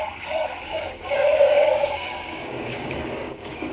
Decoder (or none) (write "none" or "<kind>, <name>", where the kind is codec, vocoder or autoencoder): codec, DAC